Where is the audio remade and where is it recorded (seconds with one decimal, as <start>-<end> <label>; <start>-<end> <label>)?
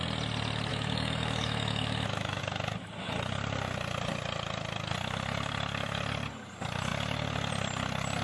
0.0-0.7 recorded; 0.7-2.4 remade; 2.4-8.2 recorded